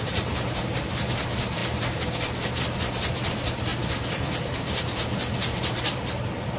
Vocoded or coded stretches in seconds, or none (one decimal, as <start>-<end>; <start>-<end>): none